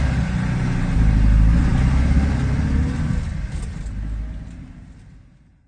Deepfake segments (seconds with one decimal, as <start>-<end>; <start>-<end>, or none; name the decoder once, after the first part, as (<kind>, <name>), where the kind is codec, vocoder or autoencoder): none